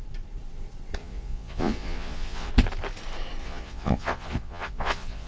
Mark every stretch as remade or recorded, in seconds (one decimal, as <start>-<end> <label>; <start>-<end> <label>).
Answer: 0.0-1.0 recorded; 1.0-2.5 remade; 2.5-3.4 recorded; 3.4-5.3 remade